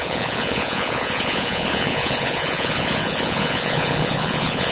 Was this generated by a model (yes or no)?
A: yes